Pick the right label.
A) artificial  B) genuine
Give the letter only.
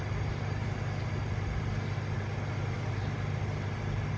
B